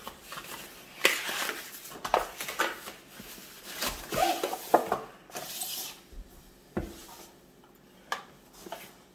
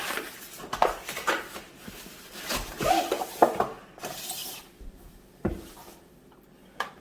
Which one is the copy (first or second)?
second